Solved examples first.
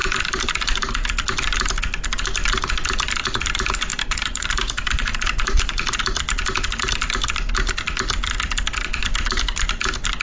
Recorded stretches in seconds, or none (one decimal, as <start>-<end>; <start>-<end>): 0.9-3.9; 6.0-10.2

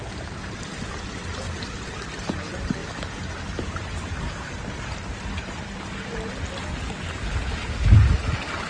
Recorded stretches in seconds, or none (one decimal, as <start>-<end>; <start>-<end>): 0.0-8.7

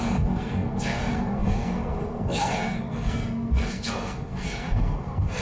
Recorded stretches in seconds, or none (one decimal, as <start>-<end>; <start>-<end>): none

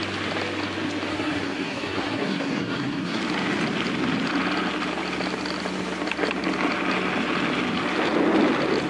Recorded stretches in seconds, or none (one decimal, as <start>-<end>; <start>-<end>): 0.0-1.1; 3.2-8.9